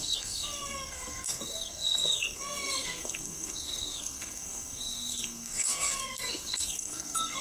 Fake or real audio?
fake